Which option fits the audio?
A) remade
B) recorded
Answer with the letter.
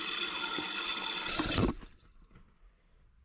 B